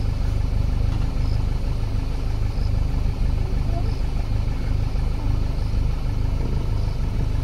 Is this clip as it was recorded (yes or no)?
yes